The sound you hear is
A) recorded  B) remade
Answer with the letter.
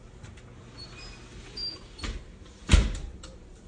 B